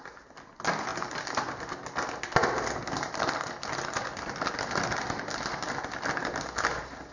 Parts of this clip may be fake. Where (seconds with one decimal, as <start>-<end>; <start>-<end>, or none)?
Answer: none